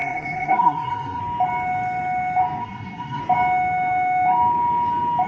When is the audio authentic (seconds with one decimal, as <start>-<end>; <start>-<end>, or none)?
1.2-2.6; 3.2-5.3